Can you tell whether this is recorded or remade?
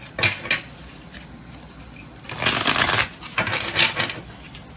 recorded